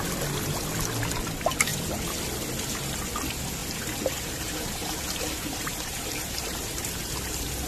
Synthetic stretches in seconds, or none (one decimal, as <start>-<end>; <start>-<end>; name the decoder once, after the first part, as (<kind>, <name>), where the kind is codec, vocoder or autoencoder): 3.6-7.7 (vocoder, BigVGAN v2)